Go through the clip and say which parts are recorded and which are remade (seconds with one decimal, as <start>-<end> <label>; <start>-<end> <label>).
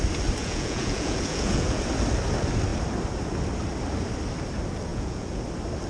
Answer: 0.0-0.4 recorded; 0.4-1.8 remade; 1.8-4.9 recorded; 4.9-5.4 remade; 5.4-5.9 recorded